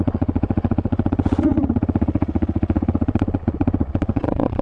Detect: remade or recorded remade